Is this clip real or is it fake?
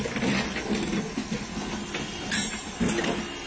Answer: real